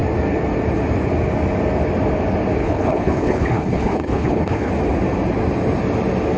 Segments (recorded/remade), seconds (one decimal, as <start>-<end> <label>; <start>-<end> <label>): 0.0-2.6 recorded; 2.6-4.7 remade; 4.7-6.4 recorded